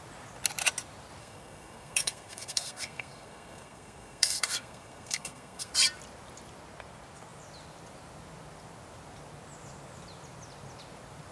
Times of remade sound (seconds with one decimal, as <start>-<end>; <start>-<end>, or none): 1.2-5.7